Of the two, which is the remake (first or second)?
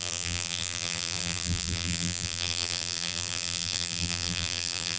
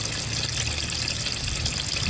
first